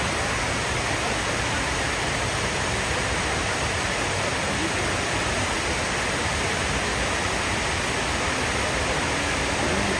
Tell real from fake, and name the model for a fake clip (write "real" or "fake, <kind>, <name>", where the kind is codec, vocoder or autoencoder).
real